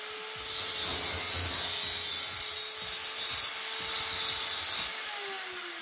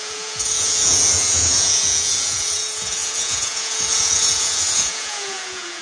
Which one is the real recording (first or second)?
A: first